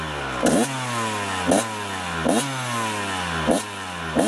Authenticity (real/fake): real